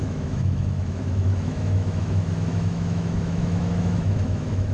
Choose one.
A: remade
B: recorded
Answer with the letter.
A